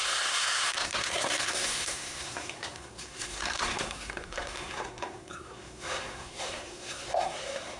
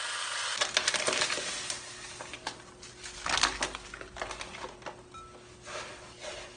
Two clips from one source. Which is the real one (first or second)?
second